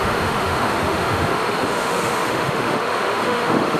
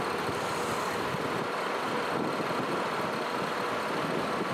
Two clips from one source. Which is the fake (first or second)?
first